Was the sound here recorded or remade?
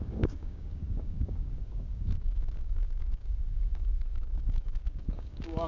remade